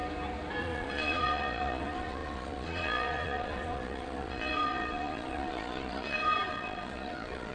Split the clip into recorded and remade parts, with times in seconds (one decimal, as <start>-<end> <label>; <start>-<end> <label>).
0.0-0.6 recorded; 0.6-7.5 remade